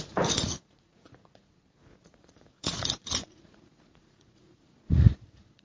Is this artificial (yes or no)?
yes